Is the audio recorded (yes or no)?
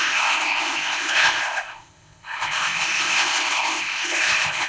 no